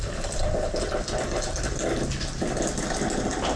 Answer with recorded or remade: recorded